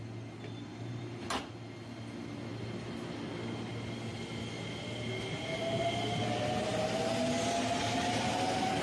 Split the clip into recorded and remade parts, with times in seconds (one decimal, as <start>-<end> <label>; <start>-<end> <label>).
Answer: 0.0-0.7 recorded; 0.7-1.5 remade; 1.5-8.8 recorded